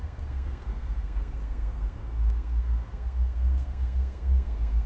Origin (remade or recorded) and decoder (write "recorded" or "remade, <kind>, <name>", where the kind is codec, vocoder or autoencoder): remade, codec, SNAC